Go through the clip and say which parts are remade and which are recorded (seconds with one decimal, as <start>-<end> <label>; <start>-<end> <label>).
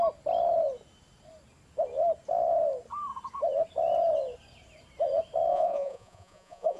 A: 0.0-5.5 recorded; 5.5-6.8 remade